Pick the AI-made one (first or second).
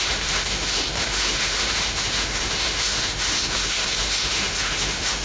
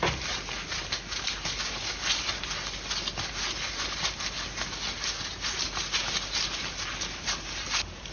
first